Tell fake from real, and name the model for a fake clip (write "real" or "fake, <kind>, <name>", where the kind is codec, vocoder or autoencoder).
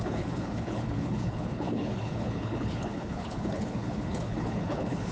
fake, codec, HILCodec